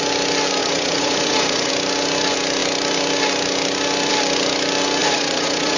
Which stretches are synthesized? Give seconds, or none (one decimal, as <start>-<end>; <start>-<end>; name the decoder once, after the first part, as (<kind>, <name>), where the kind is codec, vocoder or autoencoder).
0.6-1.7 (vocoder, Vocos); 5.0-5.8